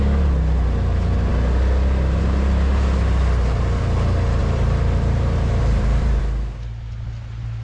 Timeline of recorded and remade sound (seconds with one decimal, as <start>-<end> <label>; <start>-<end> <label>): 0.0-4.4 recorded; 4.4-6.2 remade; 6.2-7.6 recorded